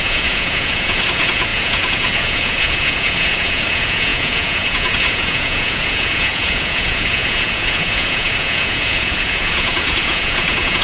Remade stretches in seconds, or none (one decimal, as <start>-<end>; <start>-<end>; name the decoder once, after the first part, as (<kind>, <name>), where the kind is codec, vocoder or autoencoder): 0.0-10.8 (vocoder, Vocos)